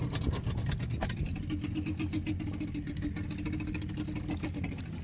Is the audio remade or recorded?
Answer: recorded